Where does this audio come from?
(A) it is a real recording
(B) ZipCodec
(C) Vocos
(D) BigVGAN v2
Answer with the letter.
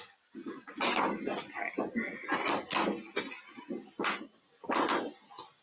A